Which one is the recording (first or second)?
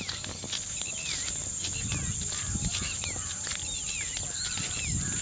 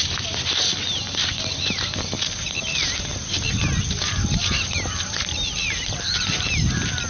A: first